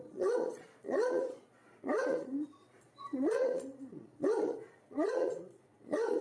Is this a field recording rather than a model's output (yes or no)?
no